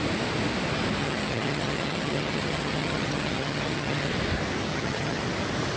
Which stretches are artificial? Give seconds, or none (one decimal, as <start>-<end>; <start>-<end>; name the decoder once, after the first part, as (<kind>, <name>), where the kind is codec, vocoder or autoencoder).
1.0-4.1 (vocoder, HiFi-GAN); 4.7-5.2